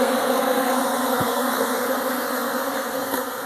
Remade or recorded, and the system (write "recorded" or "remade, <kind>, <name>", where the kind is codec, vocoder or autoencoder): remade, codec, SNAC